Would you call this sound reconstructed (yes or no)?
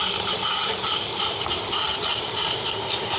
yes